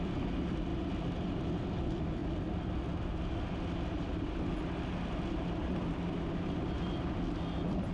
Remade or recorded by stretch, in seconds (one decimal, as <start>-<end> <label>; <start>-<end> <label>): 0.0-7.9 recorded